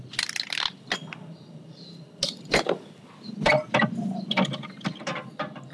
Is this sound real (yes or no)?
yes